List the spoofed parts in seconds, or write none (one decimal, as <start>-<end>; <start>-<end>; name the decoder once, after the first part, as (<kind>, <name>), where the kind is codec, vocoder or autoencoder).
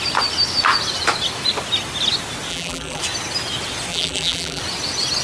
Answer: 2.5-3.0 (vocoder, BigVGAN v2); 3.9-4.6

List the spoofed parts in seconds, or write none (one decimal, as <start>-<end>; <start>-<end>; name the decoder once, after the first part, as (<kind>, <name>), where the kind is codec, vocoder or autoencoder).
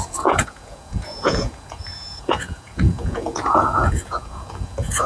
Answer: 0.0-5.1 (vocoder, Vocos)